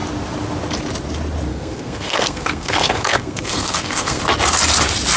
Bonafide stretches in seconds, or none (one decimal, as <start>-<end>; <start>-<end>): 0.0-1.5; 4.2-5.2